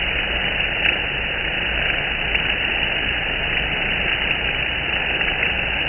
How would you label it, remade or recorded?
recorded